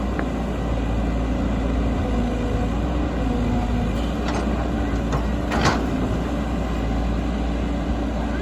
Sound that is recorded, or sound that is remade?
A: recorded